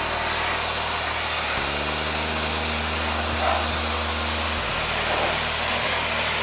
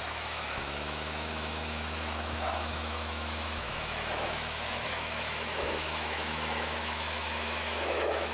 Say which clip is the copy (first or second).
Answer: second